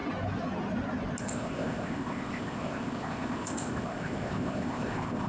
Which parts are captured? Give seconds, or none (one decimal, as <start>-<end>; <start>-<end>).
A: 0.0-1.2